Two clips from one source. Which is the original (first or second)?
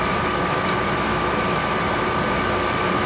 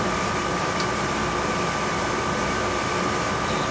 first